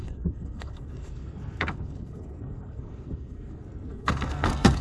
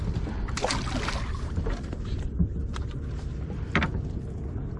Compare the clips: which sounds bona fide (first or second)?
second